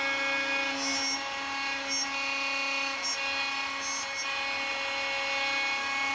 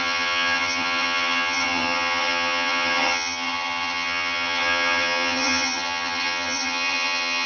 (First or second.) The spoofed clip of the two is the second